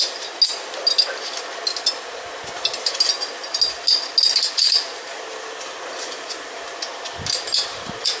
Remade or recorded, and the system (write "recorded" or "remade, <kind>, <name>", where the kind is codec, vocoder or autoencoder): recorded